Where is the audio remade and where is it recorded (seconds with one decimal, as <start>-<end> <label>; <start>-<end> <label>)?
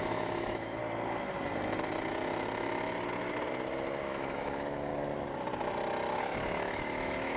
0.0-0.8 remade; 0.8-4.0 recorded; 4.0-4.9 remade; 4.9-6.2 recorded; 6.2-7.4 remade